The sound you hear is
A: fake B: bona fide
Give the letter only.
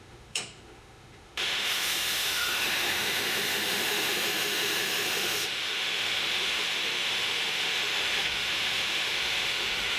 A